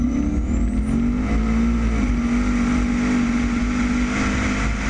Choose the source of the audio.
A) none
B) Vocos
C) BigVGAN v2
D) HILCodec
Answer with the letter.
A